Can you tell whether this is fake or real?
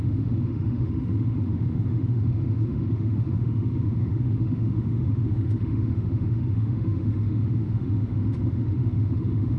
fake